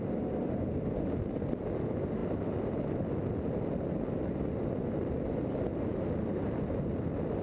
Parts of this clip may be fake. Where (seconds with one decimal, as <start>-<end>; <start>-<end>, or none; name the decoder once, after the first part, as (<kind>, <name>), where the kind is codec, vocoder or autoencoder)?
none